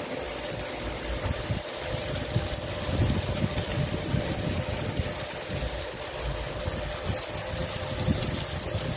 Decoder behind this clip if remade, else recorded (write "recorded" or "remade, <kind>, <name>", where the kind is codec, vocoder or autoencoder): recorded